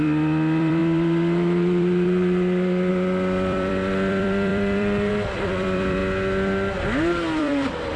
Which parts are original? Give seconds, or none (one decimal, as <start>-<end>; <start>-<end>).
6.0-6.8